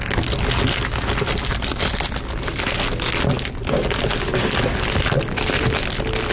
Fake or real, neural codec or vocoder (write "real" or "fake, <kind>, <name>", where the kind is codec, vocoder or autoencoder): real